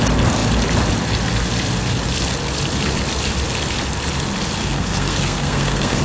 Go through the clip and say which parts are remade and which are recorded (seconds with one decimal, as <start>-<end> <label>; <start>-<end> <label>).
0.0-4.6 recorded; 4.6-6.0 remade